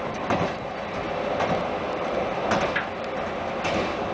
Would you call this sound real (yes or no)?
yes